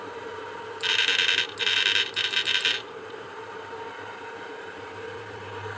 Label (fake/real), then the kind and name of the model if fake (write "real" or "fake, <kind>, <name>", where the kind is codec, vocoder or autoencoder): fake, vocoder, BigVGAN v2